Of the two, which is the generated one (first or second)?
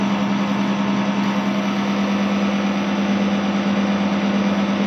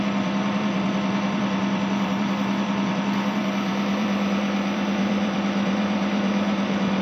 second